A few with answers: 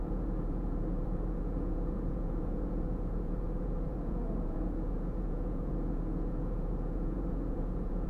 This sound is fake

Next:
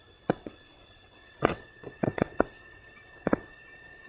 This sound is fake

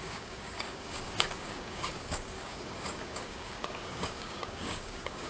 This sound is fake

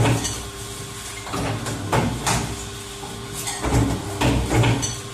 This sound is real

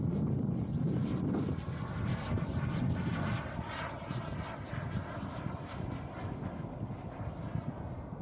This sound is real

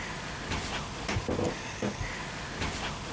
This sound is real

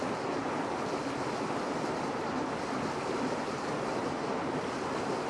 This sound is real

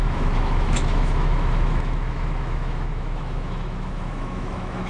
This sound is fake